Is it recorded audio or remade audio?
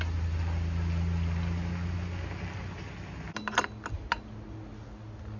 recorded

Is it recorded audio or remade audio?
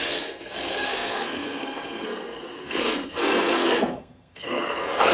remade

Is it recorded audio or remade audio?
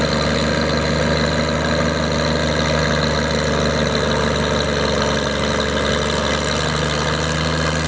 recorded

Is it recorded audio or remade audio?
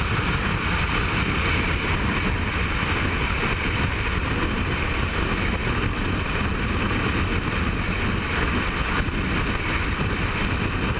recorded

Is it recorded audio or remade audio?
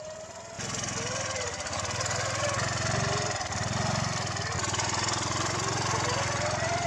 recorded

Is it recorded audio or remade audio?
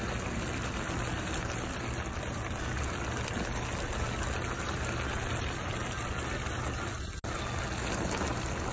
recorded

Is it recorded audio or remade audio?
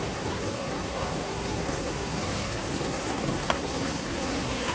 remade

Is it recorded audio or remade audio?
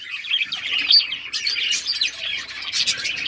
recorded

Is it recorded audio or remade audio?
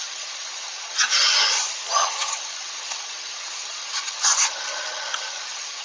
remade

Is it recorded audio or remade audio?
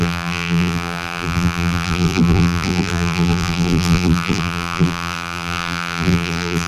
remade